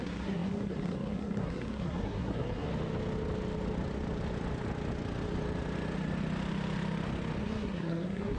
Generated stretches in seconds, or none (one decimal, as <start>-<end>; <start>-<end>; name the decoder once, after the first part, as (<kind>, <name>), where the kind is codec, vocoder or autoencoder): 0.0-2.7 (codec, SNAC); 7.4-8.4